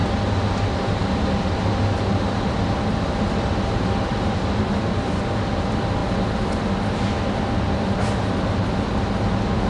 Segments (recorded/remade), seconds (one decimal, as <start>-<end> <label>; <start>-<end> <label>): 0.0-4.6 remade; 4.6-9.7 recorded